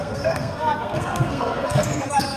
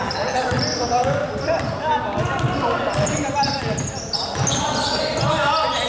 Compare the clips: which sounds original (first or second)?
second